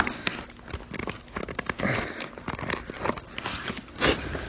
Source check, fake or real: real